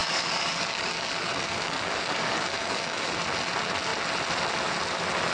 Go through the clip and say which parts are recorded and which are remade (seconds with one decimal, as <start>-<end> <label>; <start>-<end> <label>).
0.0-3.2 remade; 3.2-5.3 recorded